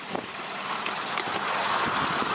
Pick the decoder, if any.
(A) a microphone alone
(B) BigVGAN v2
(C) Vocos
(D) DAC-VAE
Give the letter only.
A